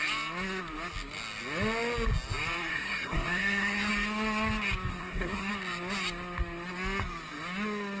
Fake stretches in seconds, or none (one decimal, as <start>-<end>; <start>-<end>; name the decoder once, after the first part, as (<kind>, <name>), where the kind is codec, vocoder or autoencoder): 2.7-3.9 (codec, SNAC); 4.9-5.5